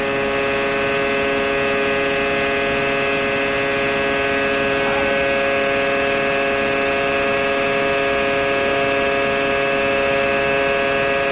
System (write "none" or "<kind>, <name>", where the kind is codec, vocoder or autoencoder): none